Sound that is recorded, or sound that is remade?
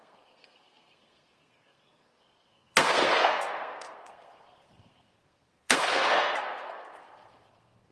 remade